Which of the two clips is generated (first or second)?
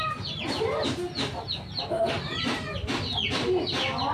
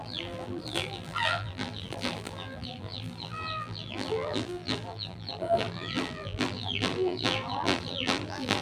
second